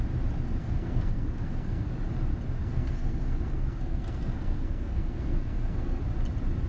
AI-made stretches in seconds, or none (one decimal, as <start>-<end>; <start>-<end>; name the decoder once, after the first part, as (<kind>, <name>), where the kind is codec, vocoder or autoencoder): 0.6-1.9 (codec, SNAC); 2.6-6.0